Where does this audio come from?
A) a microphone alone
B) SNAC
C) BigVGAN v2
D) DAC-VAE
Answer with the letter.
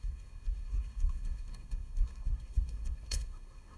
B